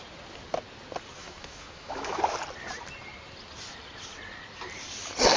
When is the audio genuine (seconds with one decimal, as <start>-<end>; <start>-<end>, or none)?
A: 0.0-1.2; 2.2-5.4